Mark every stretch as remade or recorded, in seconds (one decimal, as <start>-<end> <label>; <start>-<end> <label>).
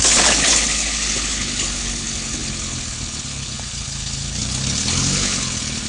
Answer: 0.0-5.9 remade